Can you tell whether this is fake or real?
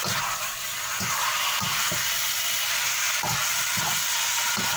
real